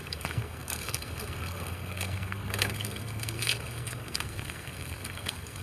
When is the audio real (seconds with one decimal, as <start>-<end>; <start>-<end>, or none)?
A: none